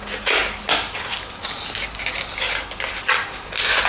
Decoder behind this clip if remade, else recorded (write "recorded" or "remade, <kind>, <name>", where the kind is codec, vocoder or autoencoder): recorded